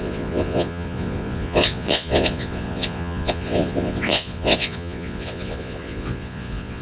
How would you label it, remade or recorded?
remade